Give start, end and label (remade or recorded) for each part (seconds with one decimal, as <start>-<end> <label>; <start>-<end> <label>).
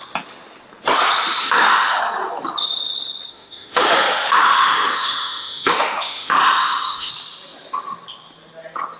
0.0-1.4 recorded; 1.4-2.0 remade; 2.0-3.3 recorded; 3.3-7.1 remade; 7.1-9.0 recorded